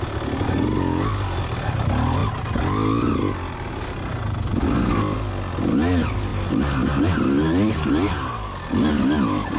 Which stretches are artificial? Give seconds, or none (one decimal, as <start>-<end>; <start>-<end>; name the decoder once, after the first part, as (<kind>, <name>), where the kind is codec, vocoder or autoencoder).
none